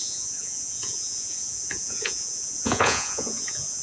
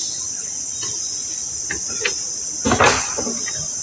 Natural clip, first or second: second